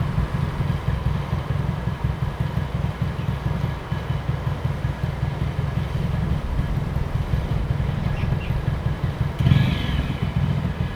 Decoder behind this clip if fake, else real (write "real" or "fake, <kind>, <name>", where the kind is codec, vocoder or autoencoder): real